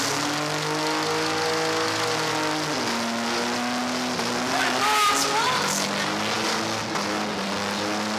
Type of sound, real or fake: real